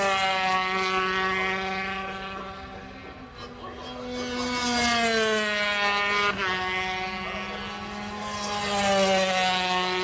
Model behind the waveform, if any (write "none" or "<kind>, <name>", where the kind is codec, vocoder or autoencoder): none